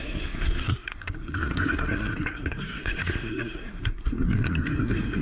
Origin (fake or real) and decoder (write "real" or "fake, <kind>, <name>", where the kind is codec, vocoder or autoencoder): fake, codec, SNAC